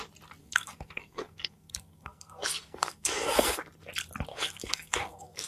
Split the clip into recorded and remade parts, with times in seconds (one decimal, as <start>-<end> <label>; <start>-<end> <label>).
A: 0.0-0.4 recorded; 0.4-3.6 remade; 3.6-4.3 recorded; 4.3-5.5 remade